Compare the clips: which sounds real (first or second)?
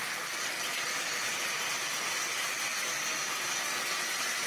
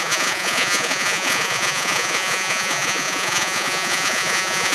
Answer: first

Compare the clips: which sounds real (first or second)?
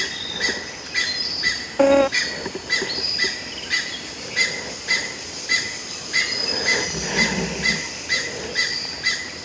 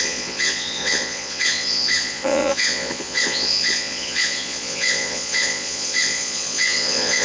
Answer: first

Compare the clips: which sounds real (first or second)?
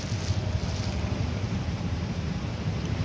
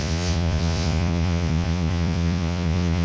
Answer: first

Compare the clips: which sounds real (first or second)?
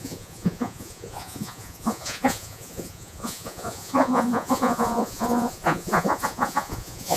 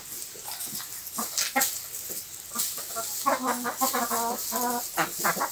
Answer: second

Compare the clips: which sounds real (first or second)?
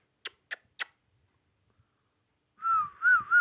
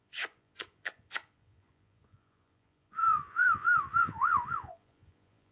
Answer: first